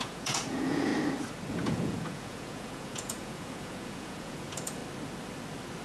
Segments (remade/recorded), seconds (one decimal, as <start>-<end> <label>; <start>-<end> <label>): 0.0-0.9 remade; 0.9-1.5 recorded; 1.5-4.8 remade; 4.8-5.8 recorded